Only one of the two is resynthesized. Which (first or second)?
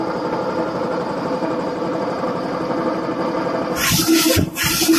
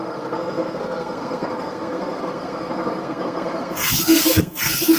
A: second